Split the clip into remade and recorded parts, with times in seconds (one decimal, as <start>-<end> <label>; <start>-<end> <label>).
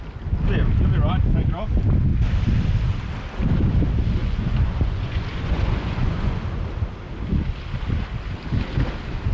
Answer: 0.0-4.2 recorded; 4.2-6.6 remade; 6.6-9.3 recorded